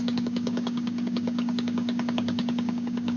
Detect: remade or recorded remade